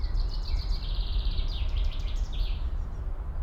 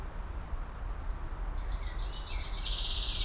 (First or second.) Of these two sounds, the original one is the second